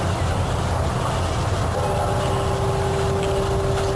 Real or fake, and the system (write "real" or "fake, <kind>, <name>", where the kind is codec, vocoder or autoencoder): real